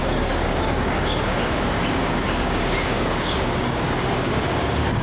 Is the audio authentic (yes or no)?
no